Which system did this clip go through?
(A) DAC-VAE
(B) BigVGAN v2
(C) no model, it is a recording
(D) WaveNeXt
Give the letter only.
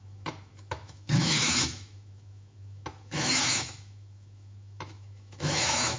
A